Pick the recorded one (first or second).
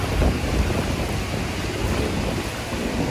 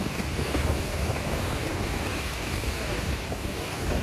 first